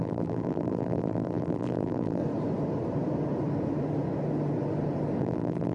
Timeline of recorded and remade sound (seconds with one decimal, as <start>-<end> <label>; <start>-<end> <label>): 0.0-2.2 remade; 2.2-5.2 recorded; 5.2-5.7 remade